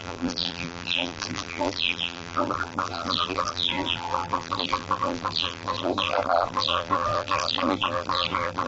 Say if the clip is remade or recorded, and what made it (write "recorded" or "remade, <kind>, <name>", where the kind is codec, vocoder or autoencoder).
remade, vocoder, BigVGAN v2